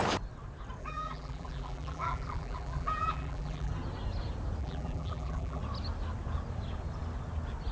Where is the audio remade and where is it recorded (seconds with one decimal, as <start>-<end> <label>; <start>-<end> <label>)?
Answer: 0.0-0.8 recorded; 0.8-3.7 remade; 3.7-4.6 recorded; 4.6-5.6 remade; 5.6-7.7 recorded